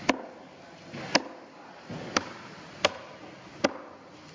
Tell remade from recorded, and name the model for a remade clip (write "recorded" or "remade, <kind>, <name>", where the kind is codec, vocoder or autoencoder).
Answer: recorded